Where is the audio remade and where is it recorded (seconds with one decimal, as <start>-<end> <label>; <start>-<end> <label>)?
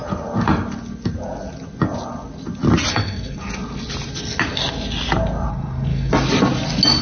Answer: 0.0-2.9 recorded; 2.9-3.5 remade; 3.5-5.5 recorded; 5.5-6.1 remade; 6.1-7.0 recorded